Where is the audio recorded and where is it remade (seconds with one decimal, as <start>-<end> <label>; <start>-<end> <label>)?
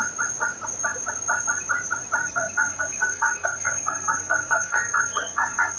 0.0-2.2 recorded; 2.2-5.8 remade